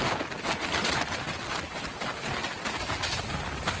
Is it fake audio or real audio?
real